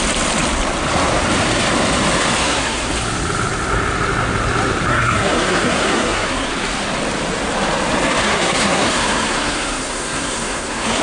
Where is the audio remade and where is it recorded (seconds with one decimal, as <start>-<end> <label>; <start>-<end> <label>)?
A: 0.0-2.4 recorded; 2.4-2.9 remade; 2.9-4.9 recorded; 4.9-6.5 remade; 6.5-8.2 recorded; 8.2-11.0 remade